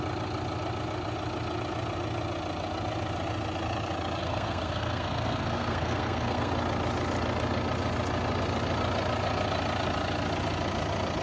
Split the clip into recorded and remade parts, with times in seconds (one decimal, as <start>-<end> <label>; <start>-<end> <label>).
0.0-4.2 recorded; 4.2-6.5 remade; 6.5-11.2 recorded